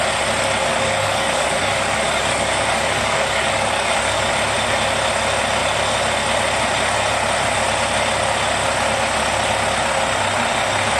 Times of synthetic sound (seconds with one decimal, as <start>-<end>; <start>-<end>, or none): 0.7-4.3